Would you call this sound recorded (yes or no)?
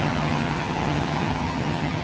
no